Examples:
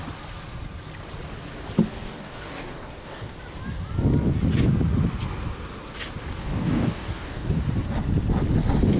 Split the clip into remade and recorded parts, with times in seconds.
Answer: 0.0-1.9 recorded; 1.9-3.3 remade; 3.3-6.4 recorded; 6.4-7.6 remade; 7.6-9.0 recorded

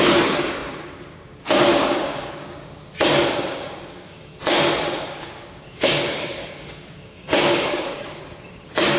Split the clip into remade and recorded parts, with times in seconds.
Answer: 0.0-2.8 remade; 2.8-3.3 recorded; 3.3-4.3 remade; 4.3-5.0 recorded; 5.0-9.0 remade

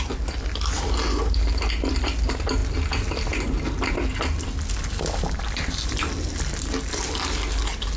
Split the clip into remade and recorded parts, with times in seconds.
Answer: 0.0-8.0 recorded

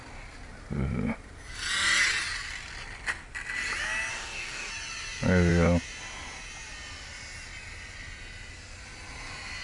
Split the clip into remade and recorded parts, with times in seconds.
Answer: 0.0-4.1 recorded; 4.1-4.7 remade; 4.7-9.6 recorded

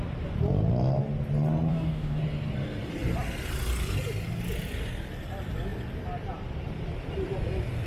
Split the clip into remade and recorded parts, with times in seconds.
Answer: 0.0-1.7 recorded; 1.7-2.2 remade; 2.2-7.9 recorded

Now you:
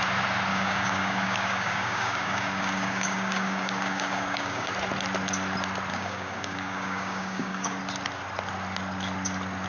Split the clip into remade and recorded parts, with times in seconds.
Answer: 0.0-0.5 recorded; 0.5-4.7 remade; 4.7-5.9 recorded; 5.9-7.8 remade; 7.8-9.7 recorded